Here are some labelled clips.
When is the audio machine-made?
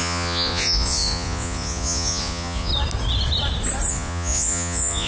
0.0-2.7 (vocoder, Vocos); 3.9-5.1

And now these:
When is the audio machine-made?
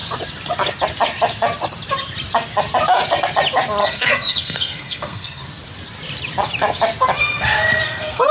3.8-5.4 (codec, SNAC); 7.2-8.3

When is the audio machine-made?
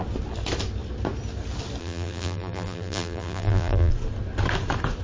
1.8-3.9 (vocoder, BigVGAN v2)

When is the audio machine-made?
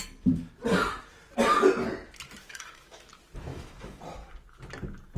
2.4-3.1 (autoencoder, DAC-VAE); 3.5-4.0